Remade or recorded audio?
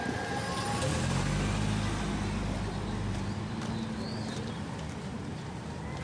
recorded